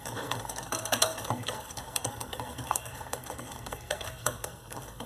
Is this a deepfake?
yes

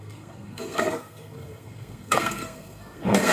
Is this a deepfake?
yes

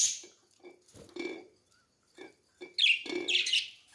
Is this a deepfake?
no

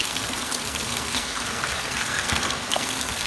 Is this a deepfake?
yes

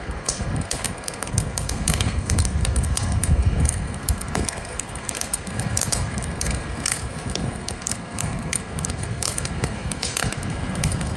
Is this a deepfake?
yes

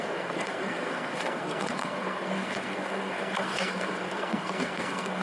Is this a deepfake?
yes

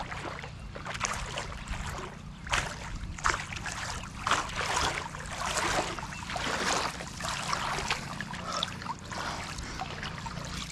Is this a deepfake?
no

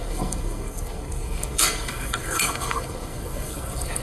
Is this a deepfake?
yes